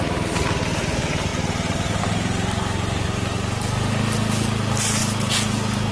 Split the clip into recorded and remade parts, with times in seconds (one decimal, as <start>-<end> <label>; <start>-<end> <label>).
0.0-5.0 recorded; 5.0-5.9 remade